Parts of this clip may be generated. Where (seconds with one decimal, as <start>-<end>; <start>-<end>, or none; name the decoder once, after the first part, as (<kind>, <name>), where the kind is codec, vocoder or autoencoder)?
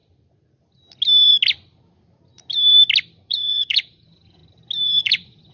3.3-4.4 (vocoder, Vocos); 5.0-5.5